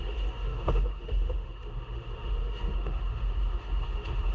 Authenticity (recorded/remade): remade